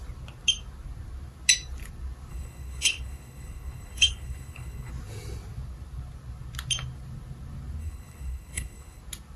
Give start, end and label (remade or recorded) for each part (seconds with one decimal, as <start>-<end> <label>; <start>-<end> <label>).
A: 0.0-2.3 recorded; 2.3-4.9 remade; 4.9-7.8 recorded; 7.8-9.0 remade; 9.0-9.4 recorded